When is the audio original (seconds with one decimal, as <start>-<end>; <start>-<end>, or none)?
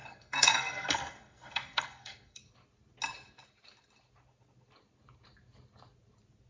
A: 2.4-6.5